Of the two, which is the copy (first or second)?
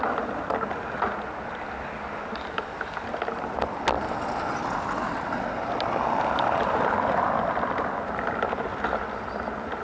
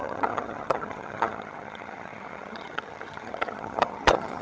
second